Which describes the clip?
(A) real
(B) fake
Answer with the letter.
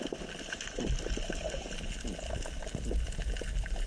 A